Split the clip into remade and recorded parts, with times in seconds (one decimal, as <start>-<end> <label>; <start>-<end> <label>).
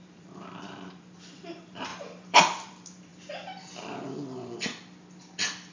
0.0-3.1 remade; 3.1-5.7 recorded